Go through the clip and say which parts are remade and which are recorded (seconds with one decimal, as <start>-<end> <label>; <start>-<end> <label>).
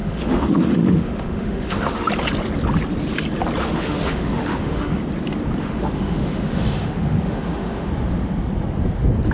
0.0-2.1 remade; 2.1-3.6 recorded; 3.6-5.0 remade; 5.0-5.6 recorded; 5.6-7.9 remade; 7.9-9.3 recorded